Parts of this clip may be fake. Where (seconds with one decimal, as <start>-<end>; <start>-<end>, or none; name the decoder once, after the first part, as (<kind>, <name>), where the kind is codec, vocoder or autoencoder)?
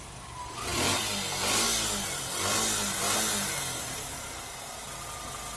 none